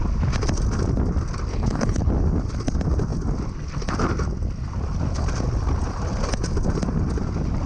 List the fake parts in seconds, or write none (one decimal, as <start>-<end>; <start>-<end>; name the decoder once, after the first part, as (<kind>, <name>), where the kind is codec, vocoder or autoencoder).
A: 1.5-2.1 (codec, HILCodec)